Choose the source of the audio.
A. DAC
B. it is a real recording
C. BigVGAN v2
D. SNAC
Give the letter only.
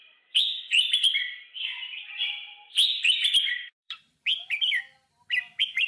C